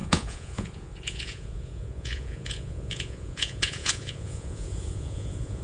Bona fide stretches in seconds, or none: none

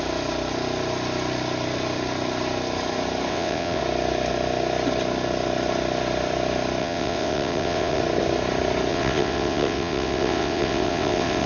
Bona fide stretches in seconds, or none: 0.0-3.3; 3.8-6.8; 8.0-8.9

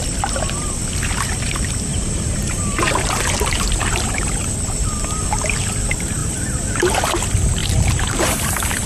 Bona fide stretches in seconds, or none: 0.0-1.9; 4.5-7.6; 8.4-8.9

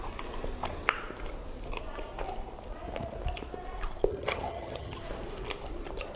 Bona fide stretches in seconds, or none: 0.0-4.1; 5.0-6.2

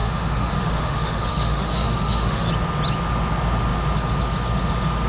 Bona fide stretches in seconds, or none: 2.5-5.1

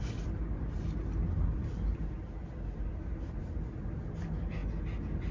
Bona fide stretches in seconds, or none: 0.0-5.3

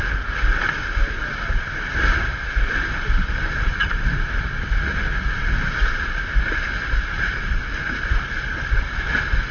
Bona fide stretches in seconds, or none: 0.0-9.5

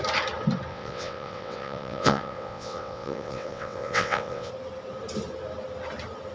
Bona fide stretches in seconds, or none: 0.0-0.7; 4.5-6.3